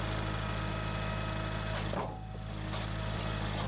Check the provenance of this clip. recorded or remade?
recorded